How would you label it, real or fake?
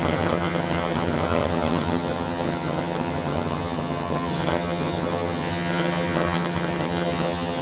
fake